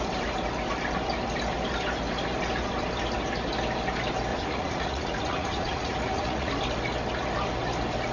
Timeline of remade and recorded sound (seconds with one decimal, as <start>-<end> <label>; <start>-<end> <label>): 0.0-4.3 recorded; 4.3-6.5 remade; 6.5-8.1 recorded